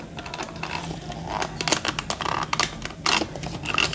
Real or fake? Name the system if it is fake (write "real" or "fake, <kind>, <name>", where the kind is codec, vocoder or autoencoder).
real